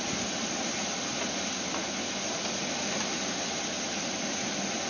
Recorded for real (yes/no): yes